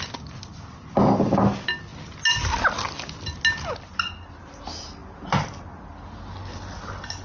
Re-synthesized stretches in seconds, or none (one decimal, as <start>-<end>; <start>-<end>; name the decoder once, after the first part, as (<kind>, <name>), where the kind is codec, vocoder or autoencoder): none